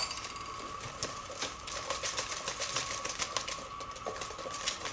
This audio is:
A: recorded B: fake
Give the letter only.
A